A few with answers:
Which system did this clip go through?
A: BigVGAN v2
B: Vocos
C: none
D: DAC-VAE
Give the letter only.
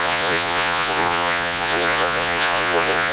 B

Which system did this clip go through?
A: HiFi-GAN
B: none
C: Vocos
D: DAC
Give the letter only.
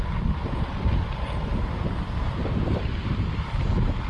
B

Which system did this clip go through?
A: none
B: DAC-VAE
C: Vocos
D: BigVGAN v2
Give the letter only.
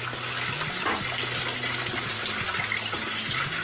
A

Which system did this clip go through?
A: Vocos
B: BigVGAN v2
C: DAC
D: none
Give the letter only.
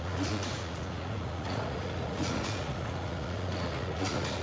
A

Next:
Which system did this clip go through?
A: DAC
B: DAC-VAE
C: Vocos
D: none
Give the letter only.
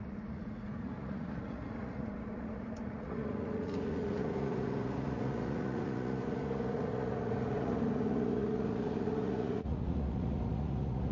C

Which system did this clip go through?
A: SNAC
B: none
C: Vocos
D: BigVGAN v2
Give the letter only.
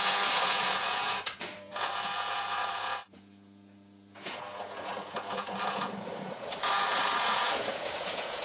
C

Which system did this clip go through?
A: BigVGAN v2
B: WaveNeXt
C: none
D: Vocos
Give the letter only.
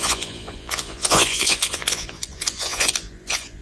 D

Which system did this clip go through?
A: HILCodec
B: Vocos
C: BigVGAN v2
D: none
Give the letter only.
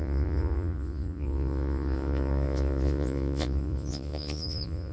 B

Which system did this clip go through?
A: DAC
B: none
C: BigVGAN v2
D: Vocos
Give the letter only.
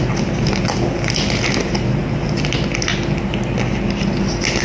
B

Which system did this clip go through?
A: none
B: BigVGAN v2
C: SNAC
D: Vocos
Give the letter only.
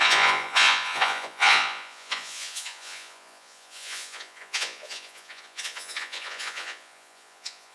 D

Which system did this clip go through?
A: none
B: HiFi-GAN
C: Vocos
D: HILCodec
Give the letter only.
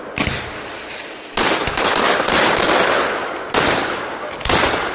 A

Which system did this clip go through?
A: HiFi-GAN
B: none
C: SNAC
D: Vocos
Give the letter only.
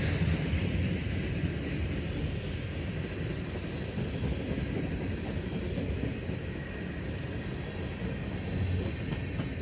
B